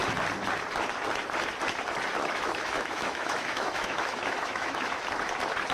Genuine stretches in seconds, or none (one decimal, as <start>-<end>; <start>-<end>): 0.0-2.2; 5.0-5.7